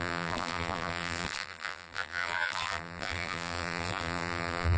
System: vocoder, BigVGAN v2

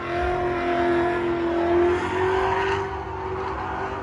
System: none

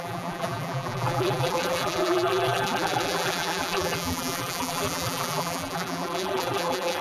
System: vocoder, BigVGAN v2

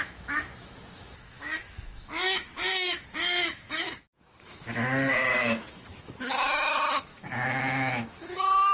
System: autoencoder, DAC-VAE